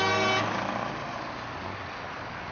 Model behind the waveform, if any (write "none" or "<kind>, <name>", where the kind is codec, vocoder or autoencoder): none